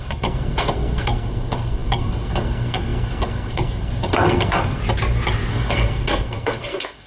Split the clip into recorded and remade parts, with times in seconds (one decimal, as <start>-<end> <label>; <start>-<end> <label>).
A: 0.0-4.8 remade; 4.8-5.5 recorded; 5.5-7.1 remade